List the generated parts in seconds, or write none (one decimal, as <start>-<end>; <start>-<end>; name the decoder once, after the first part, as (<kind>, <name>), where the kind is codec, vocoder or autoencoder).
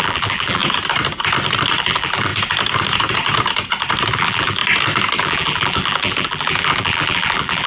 0.0-0.6 (vocoder, BigVGAN v2); 1.8-2.3; 4.1-4.6; 5.2-7.7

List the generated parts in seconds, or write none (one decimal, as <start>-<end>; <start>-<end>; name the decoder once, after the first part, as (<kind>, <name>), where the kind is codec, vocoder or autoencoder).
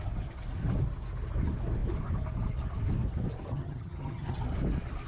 3.5-4.4 (vocoder, HiFi-GAN)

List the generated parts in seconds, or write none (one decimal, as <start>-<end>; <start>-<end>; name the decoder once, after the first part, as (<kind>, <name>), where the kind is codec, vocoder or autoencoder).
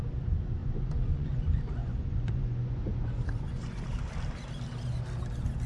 0.6-1.4 (vocoder, Vocos); 1.8-3.8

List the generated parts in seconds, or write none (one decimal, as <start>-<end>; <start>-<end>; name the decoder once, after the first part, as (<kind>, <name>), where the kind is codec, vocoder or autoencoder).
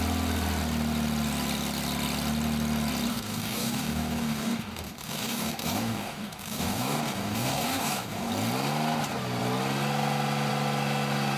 3.1-8.3 (codec, DAC)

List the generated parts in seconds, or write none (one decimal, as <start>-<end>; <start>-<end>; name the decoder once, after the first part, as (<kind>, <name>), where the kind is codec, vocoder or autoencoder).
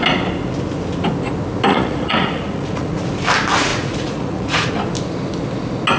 1.7-3.0 (vocoder, Vocos); 3.7-4.7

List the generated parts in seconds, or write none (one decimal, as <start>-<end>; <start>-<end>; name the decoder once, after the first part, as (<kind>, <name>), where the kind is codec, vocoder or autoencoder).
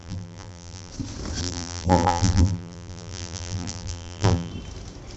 0.0-0.9 (vocoder, BigVGAN v2); 1.4-4.5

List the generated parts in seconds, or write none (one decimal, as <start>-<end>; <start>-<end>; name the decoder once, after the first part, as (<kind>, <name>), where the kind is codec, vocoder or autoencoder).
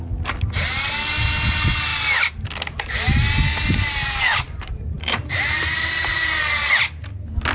4.3-6.7 (vocoder, BigVGAN v2)